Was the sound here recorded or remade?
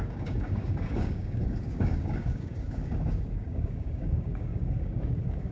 remade